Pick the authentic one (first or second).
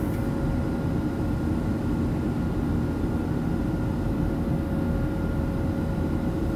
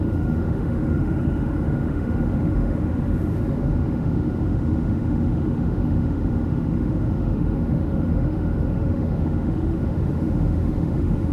first